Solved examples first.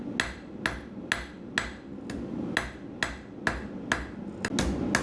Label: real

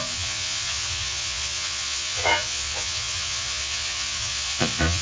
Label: fake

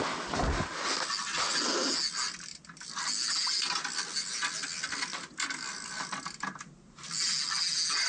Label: real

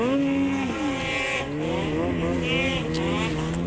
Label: real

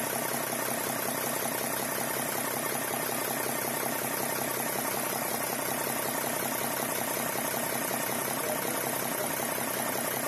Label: real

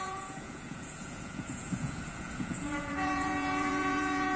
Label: fake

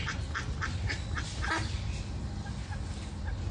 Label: real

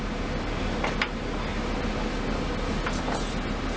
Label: real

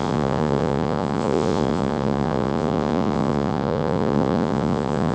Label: fake